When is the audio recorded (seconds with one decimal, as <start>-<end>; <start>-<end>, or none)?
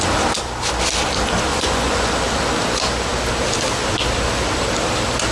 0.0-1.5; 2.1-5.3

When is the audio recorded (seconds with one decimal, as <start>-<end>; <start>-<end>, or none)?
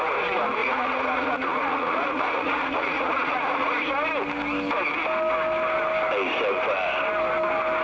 0.0-0.6; 3.9-7.8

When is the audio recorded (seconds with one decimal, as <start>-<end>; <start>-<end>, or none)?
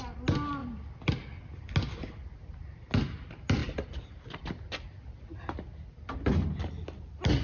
0.0-7.4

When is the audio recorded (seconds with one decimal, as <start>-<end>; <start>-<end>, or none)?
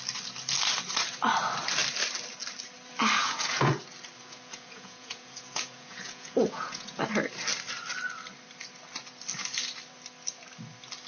0.0-3.2; 3.7-4.2; 7.0-11.1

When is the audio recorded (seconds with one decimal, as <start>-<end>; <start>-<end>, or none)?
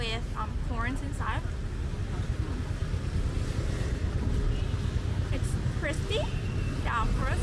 0.0-7.4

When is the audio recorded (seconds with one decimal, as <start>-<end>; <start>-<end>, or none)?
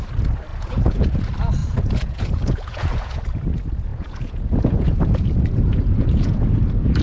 0.0-0.5; 1.2-1.6; 3.2-3.9; 6.6-7.0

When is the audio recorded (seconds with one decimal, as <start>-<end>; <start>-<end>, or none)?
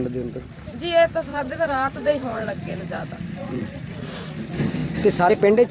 0.0-1.3; 4.3-5.7